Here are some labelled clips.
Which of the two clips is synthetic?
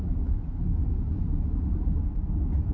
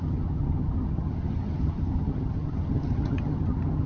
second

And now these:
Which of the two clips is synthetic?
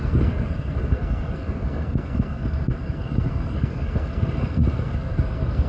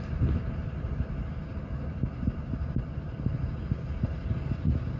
first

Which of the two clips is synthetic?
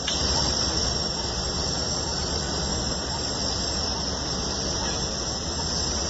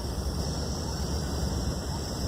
second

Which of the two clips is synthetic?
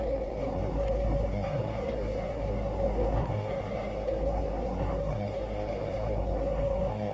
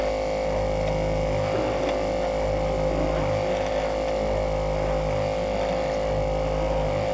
first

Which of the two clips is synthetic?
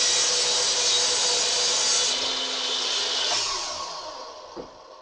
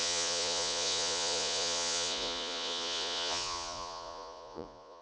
second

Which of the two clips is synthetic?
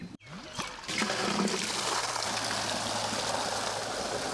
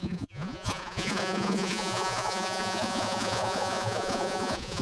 second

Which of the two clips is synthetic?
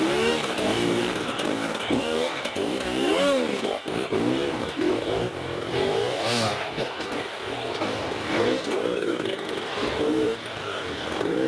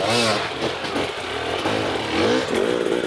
first